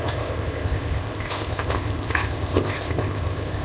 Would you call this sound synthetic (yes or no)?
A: yes